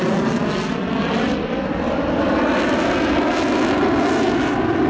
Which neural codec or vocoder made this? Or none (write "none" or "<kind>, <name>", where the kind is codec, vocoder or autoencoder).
none